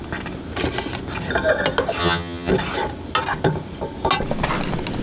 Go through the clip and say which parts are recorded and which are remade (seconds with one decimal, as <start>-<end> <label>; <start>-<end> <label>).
0.0-2.0 recorded; 2.0-2.5 remade; 2.5-5.0 recorded